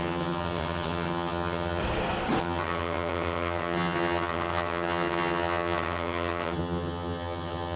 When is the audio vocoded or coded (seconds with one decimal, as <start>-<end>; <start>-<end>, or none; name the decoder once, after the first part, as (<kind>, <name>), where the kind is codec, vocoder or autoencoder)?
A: 0.0-1.8 (vocoder, HiFi-GAN); 2.4-7.8